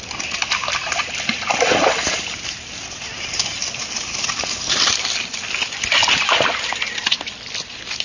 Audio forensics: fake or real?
real